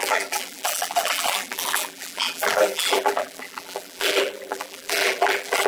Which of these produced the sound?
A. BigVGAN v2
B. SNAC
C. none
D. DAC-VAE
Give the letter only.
A